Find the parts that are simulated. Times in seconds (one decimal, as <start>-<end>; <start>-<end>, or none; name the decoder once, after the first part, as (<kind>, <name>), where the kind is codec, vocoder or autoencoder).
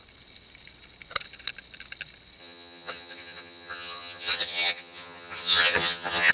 2.4-6.3 (vocoder, HiFi-GAN)